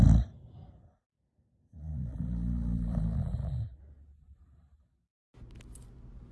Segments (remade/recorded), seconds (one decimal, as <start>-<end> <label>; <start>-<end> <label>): 0.0-1.9 recorded; 1.9-3.8 remade; 3.8-6.3 recorded